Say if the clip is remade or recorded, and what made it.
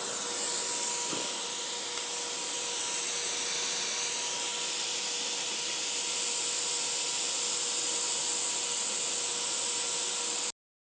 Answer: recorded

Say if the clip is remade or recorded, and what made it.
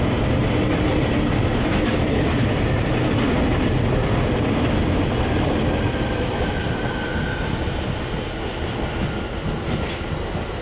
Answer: recorded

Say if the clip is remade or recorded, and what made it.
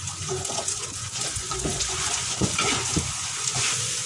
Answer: remade, vocoder, Vocos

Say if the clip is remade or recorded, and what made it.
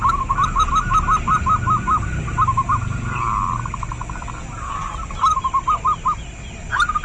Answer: recorded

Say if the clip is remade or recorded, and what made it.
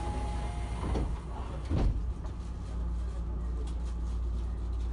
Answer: recorded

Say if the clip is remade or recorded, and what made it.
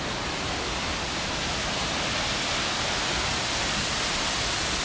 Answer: recorded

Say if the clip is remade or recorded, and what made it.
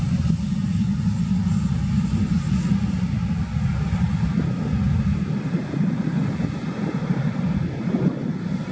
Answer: recorded